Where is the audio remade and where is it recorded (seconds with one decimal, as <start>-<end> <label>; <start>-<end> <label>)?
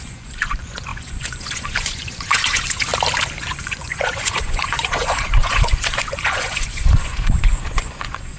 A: 0.0-2.9 remade; 2.9-3.4 recorded; 3.4-8.4 remade